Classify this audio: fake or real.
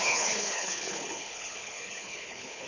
fake